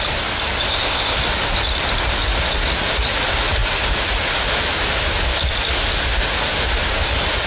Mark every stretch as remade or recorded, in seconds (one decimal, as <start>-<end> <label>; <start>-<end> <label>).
0.0-0.7 recorded; 0.7-1.2 remade; 1.2-7.5 recorded